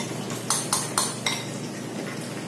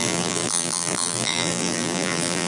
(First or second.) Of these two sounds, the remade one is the second